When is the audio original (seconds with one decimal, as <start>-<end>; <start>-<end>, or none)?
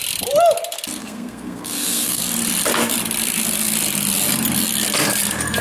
0.0-1.0; 2.2-5.6